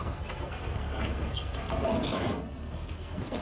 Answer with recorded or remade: remade